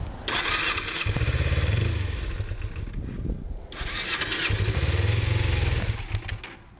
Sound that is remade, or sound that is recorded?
recorded